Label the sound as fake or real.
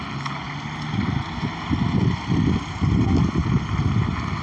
real